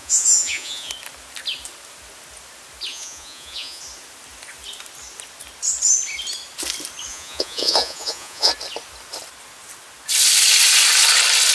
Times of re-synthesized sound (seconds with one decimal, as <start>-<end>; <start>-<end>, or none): 0.0-0.9; 2.9-3.8; 7.1-8.5